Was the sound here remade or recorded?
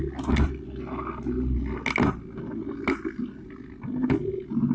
recorded